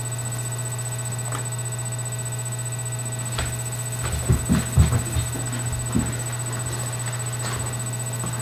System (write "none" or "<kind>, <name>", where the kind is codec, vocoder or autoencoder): none